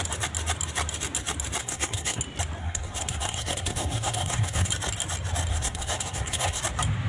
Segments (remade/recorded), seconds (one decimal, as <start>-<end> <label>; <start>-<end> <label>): 0.0-1.6 recorded; 1.6-2.2 remade; 2.2-2.6 recorded; 2.6-4.7 remade; 4.7-5.5 recorded; 5.5-6.6 remade; 6.6-7.1 recorded